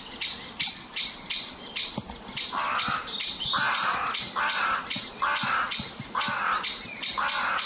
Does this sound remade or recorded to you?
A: recorded